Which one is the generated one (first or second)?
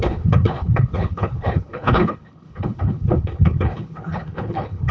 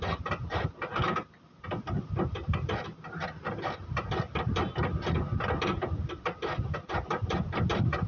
first